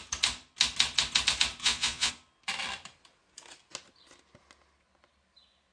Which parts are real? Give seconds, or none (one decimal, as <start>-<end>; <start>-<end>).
0.0-1.6; 2.1-5.7

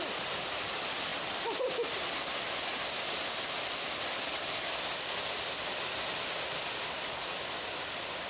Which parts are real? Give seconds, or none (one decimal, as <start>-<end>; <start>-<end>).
0.0-8.3

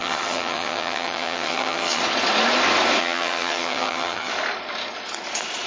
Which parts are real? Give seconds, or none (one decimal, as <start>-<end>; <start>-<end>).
2.0-3.0; 4.3-5.7